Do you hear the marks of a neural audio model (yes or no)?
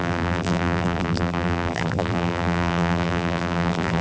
yes